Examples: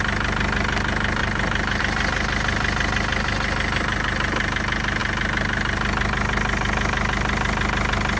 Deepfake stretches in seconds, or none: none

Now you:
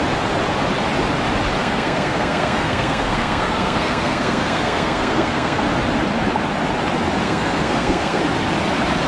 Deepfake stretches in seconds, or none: 1.6-5.6 (codec, SNAC); 7.2-8.2

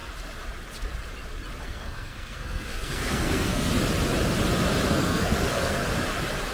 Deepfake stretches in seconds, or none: 1.6-3.7 (codec, SNAC); 4.9-5.8

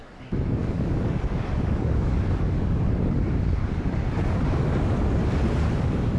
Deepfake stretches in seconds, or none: 0.0-5.2 (codec, DAC); 5.8-6.2